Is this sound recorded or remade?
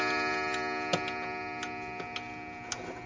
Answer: recorded